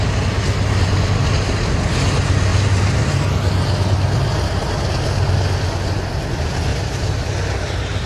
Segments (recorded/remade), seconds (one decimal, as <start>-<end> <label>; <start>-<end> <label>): 0.0-6.7 recorded; 6.7-7.3 remade; 7.3-8.1 recorded